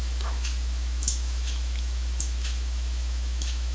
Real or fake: fake